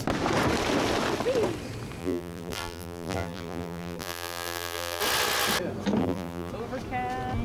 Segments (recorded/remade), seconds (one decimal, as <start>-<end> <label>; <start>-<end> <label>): 0.0-2.0 recorded; 2.0-5.0 remade; 5.0-6.0 recorded; 6.0-6.5 remade; 6.5-7.4 recorded